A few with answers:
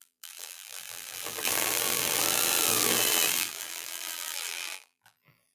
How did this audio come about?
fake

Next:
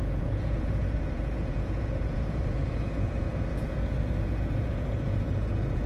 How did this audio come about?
fake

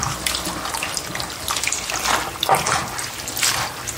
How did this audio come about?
real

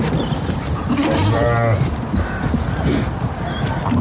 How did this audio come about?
real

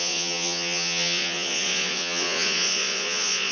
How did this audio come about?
fake